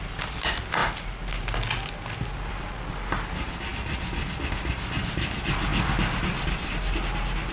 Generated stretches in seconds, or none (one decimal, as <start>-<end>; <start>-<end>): none